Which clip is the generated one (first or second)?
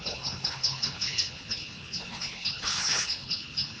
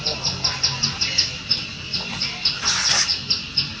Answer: first